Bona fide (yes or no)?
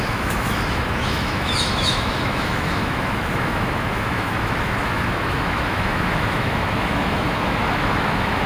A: no